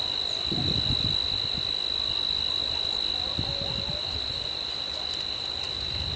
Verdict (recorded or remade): recorded